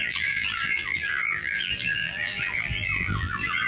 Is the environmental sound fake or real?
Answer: fake